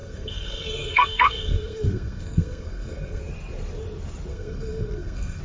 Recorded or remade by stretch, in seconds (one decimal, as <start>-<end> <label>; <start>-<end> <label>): 0.0-3.2 remade; 3.2-4.3 recorded; 4.3-5.4 remade